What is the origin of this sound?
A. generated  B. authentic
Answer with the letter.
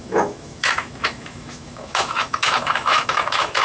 A